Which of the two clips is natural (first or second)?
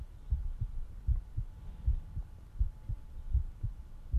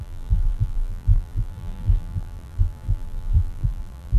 first